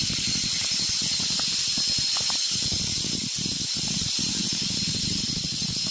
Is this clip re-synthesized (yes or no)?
no